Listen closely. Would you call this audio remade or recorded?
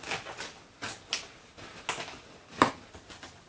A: recorded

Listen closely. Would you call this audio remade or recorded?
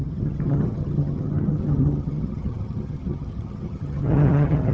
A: remade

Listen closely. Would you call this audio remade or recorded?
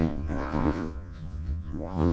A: remade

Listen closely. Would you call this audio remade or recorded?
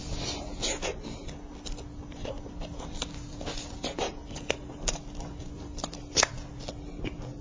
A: recorded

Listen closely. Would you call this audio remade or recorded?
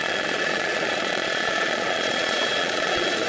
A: remade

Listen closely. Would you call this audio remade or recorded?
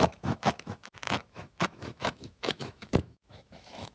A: remade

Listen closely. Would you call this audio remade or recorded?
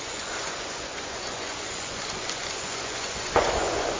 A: remade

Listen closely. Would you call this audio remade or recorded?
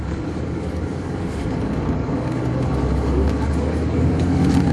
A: remade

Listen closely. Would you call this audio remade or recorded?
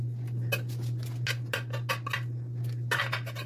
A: recorded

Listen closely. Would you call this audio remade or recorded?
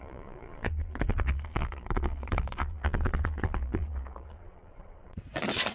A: remade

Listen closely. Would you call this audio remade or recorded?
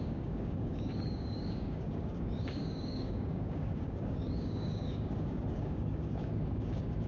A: remade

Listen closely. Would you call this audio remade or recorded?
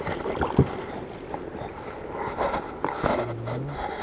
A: recorded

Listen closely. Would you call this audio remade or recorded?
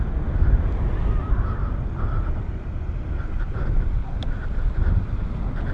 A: recorded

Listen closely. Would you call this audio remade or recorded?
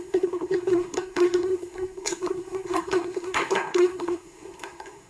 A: remade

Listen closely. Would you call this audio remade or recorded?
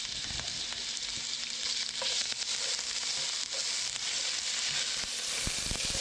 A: recorded